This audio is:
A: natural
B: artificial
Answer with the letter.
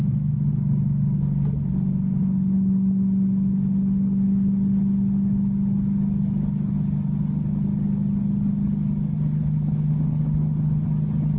A